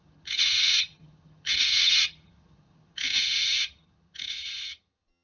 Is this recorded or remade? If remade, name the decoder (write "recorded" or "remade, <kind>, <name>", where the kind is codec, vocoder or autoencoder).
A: remade, vocoder, HiFi-GAN